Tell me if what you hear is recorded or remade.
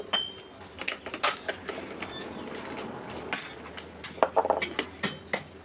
recorded